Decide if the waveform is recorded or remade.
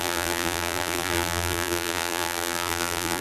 remade